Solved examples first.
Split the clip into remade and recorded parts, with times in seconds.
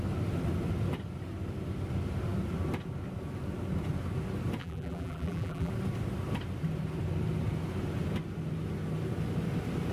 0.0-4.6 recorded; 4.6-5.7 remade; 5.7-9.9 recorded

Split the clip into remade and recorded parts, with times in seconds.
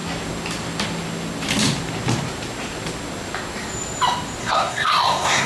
0.0-4.4 recorded; 4.4-5.5 remade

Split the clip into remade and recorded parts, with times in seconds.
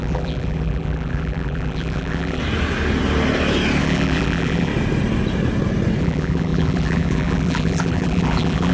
0.0-2.4 remade; 2.4-3.8 recorded; 3.8-4.7 remade; 4.7-6.0 recorded; 6.0-8.7 remade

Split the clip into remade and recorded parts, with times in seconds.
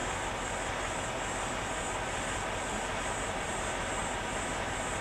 0.0-3.0 recorded; 3.0-4.0 remade; 4.0-5.0 recorded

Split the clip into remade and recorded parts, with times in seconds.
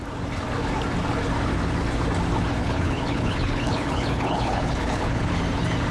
0.0-2.6 recorded; 2.6-5.4 remade; 5.4-5.9 recorded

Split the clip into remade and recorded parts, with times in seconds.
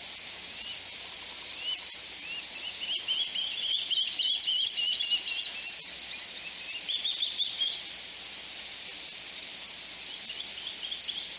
0.0-11.4 recorded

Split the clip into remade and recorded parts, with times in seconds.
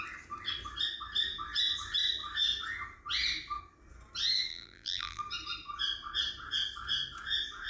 0.0-4.5 recorded; 4.5-5.2 remade; 5.2-7.7 recorded